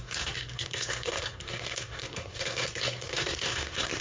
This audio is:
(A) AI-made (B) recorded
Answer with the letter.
A